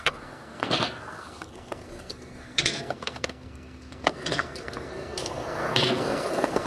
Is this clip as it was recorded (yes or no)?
no